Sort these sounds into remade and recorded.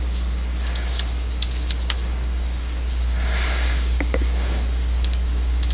remade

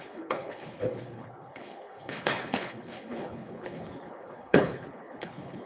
remade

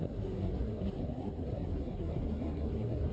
remade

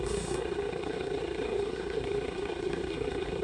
remade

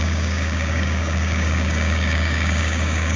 remade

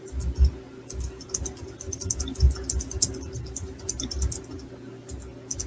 recorded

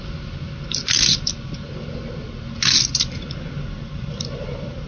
recorded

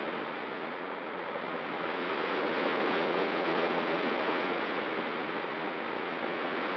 remade